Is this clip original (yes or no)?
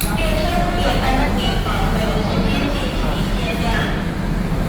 yes